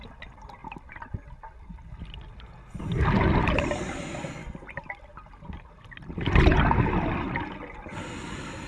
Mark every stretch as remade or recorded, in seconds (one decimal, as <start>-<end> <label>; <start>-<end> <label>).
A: 0.0-5.1 recorded; 5.1-5.8 remade; 5.8-8.7 recorded